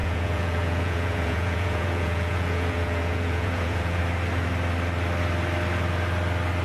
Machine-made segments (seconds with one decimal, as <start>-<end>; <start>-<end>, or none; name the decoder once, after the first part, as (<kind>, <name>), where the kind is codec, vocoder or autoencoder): 0.0-4.0 (vocoder, Vocos)